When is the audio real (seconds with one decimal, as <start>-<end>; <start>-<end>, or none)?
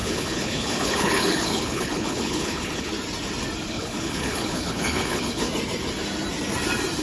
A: 2.9-3.7; 5.5-7.0